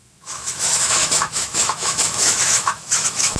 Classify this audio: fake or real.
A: fake